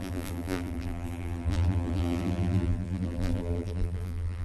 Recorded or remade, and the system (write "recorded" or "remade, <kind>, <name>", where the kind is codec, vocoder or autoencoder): remade, vocoder, BigVGAN v2